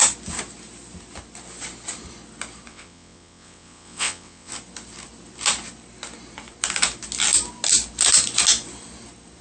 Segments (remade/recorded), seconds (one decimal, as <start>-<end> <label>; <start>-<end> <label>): 0.0-2.7 recorded; 2.7-4.5 remade; 4.5-9.4 recorded